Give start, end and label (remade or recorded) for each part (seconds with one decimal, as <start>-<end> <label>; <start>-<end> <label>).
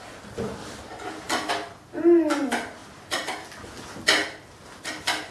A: 0.0-0.6 recorded; 0.6-1.5 remade; 1.5-2.8 recorded; 2.8-3.3 remade; 3.3-5.3 recorded